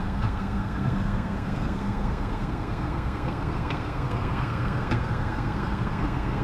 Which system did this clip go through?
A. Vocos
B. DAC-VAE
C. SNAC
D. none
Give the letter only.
C